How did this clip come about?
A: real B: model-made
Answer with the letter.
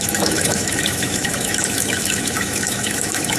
B